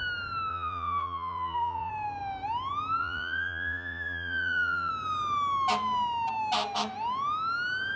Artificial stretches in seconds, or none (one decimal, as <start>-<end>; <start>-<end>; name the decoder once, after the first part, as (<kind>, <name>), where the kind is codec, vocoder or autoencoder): 0.5-1.9 (vocoder, Vocos); 3.0-4.9